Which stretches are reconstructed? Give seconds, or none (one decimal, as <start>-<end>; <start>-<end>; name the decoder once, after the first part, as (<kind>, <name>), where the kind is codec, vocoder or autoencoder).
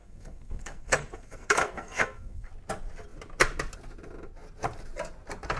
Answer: 0.0-2.5 (codec, SNAC)